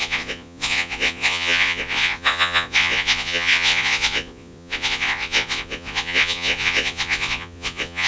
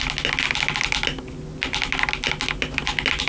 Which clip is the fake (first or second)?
first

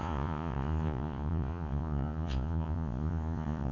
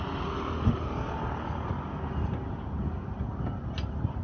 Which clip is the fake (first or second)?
first